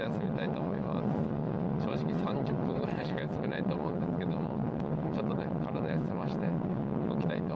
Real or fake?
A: fake